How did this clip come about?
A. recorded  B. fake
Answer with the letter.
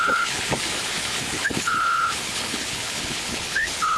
B